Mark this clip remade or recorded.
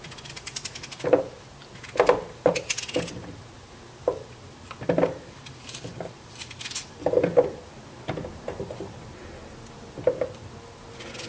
recorded